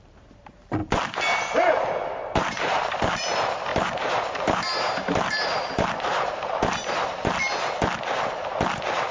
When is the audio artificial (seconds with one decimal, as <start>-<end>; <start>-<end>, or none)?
0.0-0.8; 1.9-7.4; 8.3-9.1